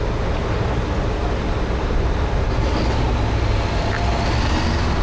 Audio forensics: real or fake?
real